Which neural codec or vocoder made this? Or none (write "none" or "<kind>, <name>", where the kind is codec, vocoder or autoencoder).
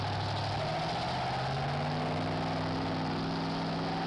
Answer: none